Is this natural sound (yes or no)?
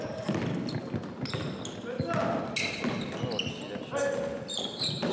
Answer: yes